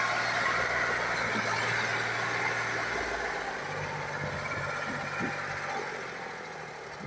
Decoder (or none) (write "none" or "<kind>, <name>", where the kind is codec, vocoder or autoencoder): none